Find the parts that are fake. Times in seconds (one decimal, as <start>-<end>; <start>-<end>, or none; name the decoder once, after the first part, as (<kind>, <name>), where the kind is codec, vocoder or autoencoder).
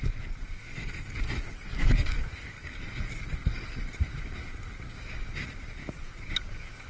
0.6-2.7 (codec, DAC); 5.8-6.9